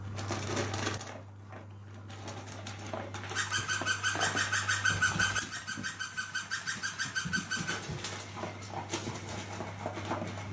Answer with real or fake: real